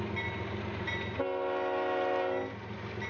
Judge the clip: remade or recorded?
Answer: recorded